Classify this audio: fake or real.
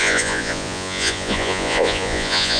fake